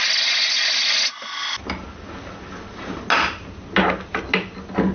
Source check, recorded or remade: recorded